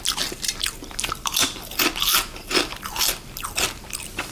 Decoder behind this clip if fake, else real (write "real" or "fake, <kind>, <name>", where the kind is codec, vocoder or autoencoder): real